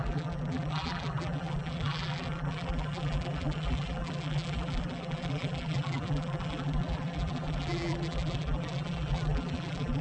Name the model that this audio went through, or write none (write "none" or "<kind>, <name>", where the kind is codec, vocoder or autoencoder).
vocoder, BigVGAN v2